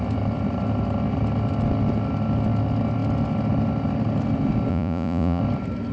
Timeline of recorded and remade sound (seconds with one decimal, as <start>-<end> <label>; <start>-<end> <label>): 0.0-4.7 recorded; 4.7-5.4 remade; 5.4-5.9 recorded

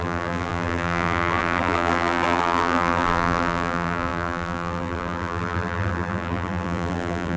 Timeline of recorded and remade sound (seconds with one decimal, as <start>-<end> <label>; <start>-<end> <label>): 0.0-7.4 remade

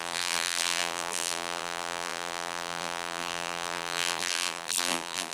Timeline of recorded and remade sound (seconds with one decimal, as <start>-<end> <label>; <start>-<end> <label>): 0.0-5.3 remade

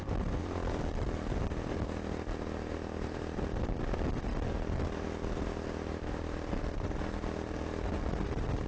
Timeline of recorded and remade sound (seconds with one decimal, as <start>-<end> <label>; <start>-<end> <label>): 0.0-8.7 recorded

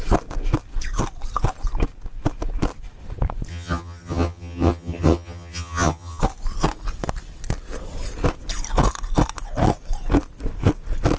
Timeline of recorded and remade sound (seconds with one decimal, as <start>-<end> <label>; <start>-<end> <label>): 0.0-3.5 recorded; 3.5-6.2 remade; 6.2-11.2 recorded

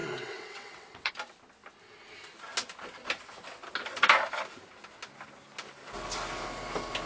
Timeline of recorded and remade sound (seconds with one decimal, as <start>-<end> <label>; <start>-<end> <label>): 0.0-1.1 remade; 1.1-7.1 recorded